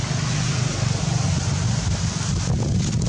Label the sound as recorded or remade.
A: recorded